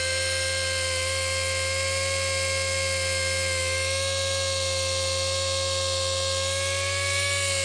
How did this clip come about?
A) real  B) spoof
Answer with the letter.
A